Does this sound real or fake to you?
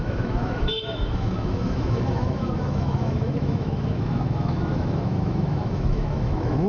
fake